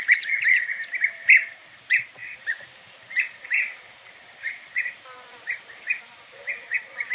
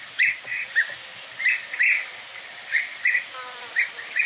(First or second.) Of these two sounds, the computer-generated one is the first